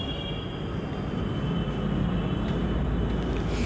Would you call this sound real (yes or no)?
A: yes